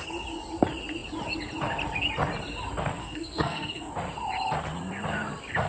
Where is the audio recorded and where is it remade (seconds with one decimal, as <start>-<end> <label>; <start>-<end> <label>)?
0.0-3.0 recorded; 3.0-3.9 remade; 3.9-5.7 recorded